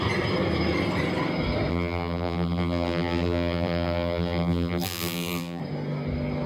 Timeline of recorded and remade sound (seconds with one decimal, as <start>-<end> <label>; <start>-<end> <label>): 0.0-1.7 recorded; 1.7-5.6 remade; 5.6-6.5 recorded